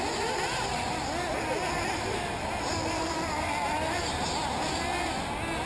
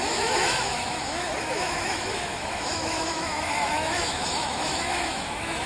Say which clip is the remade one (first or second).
second